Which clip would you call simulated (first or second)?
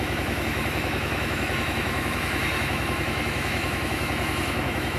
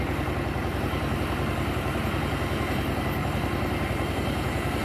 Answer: first